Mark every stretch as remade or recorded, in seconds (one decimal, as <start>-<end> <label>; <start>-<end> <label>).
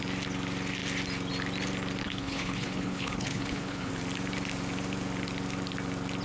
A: 0.0-2.0 recorded; 2.0-3.9 remade; 3.9-6.2 recorded